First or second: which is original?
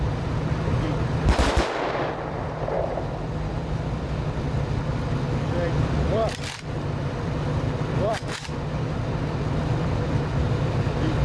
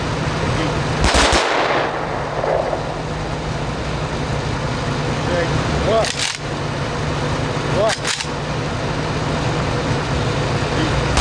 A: second